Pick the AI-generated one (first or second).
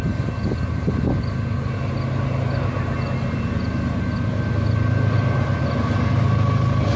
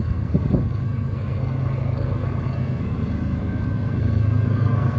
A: second